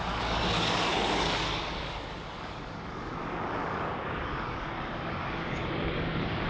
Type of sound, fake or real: fake